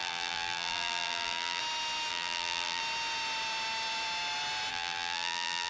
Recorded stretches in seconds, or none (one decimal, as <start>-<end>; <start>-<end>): 1.6-2.1; 2.8-4.7